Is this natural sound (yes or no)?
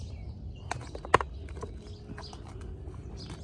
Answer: yes